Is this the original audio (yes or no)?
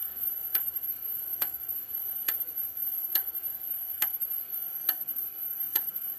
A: no